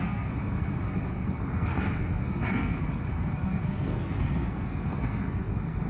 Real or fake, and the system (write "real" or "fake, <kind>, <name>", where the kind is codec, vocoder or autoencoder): fake, codec, SNAC